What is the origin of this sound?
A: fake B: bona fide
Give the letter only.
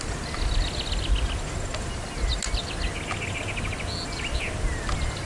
B